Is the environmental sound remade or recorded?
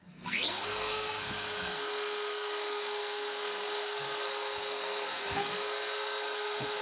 remade